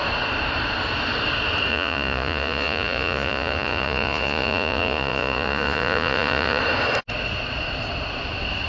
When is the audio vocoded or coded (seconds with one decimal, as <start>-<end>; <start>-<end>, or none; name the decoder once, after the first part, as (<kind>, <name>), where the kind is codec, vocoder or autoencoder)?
1.7-6.6 (vocoder, Vocos)